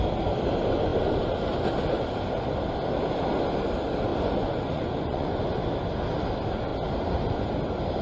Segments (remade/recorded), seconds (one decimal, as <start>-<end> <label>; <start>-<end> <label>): 0.0-4.1 recorded; 4.1-5.4 remade; 5.4-8.0 recorded

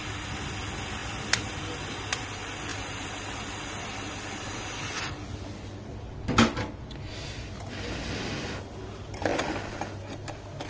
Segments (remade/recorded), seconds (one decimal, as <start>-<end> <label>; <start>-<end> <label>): 0.0-10.7 recorded

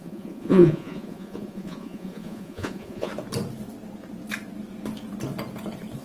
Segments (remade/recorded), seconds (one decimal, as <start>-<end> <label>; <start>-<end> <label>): 0.0-3.1 remade; 3.1-6.0 recorded

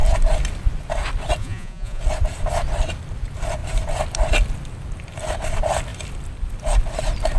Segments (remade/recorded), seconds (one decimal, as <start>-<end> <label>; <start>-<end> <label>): 0.0-1.4 recorded; 1.4-2.0 remade; 2.0-7.4 recorded

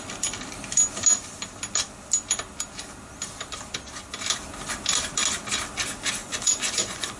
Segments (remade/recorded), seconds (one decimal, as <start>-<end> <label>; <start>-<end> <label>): 0.0-6.2 recorded; 6.2-7.2 remade